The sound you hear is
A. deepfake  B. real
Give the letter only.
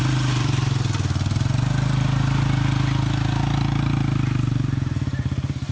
B